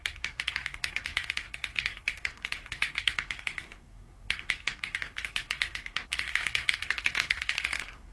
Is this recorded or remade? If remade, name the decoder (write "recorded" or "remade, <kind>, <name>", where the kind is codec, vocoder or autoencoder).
remade, codec, SNAC